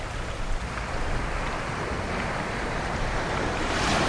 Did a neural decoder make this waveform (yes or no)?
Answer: no